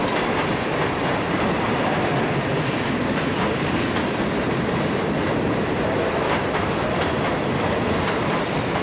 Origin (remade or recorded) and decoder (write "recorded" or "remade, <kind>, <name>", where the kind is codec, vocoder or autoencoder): recorded